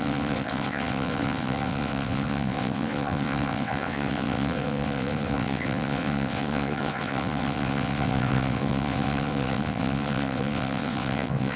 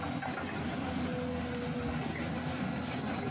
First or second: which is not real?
first